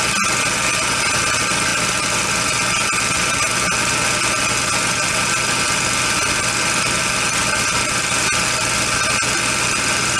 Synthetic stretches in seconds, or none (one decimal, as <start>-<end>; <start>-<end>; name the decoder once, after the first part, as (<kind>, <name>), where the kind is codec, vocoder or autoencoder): 1.7-2.5 (vocoder, BigVGAN v2); 7.4-8.1